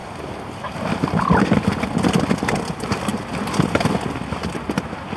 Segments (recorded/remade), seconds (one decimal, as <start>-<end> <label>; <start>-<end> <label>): 0.0-1.5 remade; 1.5-5.2 recorded